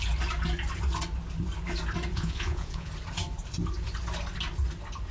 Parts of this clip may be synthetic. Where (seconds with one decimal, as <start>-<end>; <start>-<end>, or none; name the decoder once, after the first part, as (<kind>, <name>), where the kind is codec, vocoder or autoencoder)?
2.1-2.9 (vocoder, Vocos)